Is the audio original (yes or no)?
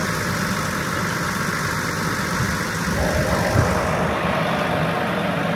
yes